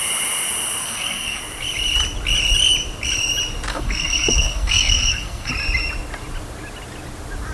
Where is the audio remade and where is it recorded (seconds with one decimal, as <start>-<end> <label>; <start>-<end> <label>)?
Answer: 0.0-0.8 recorded; 0.8-1.4 remade; 1.4-3.7 recorded; 3.7-5.5 remade; 5.5-7.5 recorded